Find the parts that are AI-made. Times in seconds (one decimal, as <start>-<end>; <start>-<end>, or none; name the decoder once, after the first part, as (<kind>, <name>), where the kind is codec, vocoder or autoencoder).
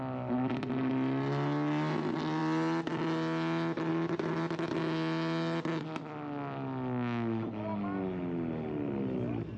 none